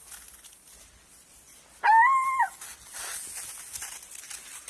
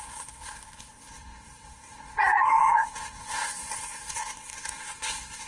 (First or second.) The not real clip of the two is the second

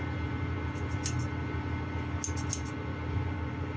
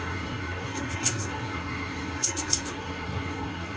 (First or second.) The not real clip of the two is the second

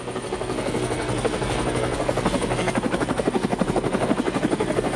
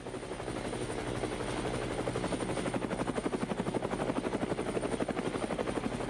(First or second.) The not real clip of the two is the first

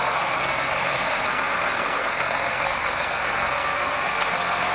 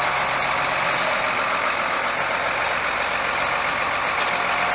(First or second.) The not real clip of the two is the first